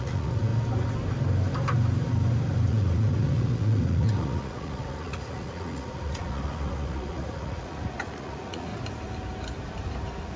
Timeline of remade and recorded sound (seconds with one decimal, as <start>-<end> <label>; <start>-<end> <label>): 0.0-0.5 remade; 0.5-2.7 recorded; 2.7-8.7 remade; 8.7-10.4 recorded